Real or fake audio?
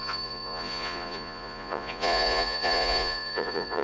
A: fake